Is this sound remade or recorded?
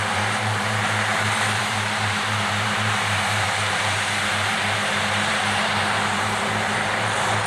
remade